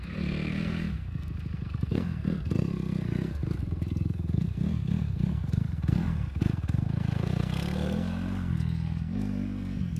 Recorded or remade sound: remade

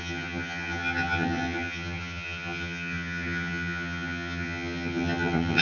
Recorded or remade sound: remade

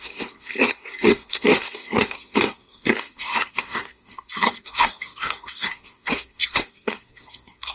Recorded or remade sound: remade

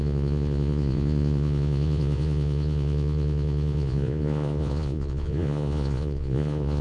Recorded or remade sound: remade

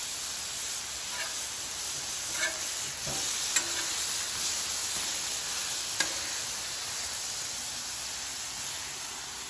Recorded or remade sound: recorded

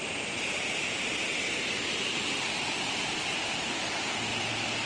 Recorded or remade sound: recorded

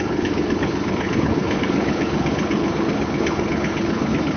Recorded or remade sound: remade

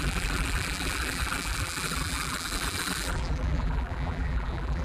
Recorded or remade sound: remade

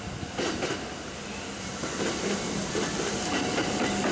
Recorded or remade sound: recorded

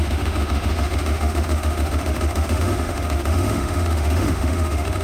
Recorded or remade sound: remade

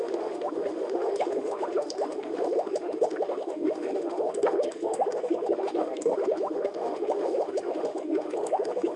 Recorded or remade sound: remade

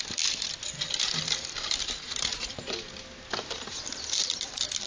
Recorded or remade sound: recorded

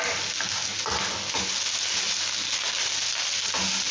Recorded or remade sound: recorded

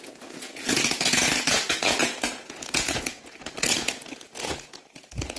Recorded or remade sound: remade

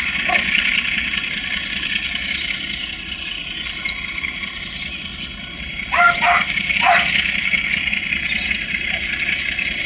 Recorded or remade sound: recorded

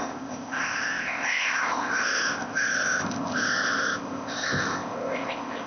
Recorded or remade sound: remade